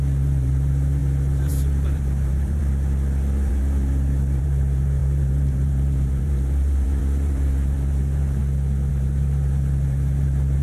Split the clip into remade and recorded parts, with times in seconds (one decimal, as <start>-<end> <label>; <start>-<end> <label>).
0.0-2.6 remade; 2.6-3.5 recorded; 3.5-8.4 remade; 8.4-8.9 recorded; 8.9-10.6 remade